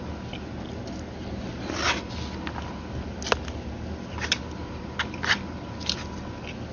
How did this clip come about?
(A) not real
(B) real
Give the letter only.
B